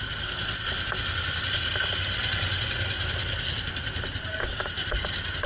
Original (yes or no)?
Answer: yes